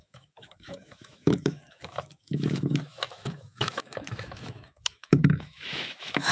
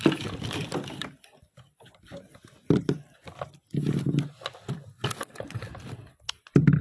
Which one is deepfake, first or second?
first